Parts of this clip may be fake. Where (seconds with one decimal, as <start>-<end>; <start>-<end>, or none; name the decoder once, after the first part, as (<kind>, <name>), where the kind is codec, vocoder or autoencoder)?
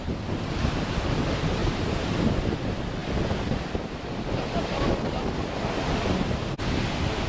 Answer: 1.6-2.6 (vocoder, BigVGAN v2)